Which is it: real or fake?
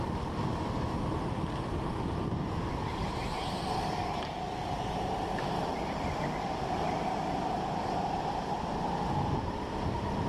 real